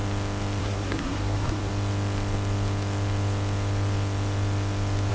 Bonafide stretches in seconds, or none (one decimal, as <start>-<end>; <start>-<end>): 0.0-0.6; 1.7-5.1